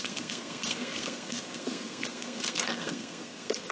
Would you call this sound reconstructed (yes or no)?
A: yes